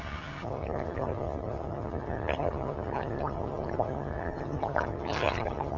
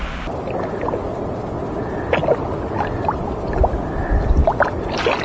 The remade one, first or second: first